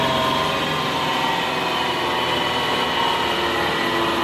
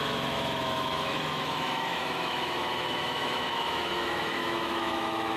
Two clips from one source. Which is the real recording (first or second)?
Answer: first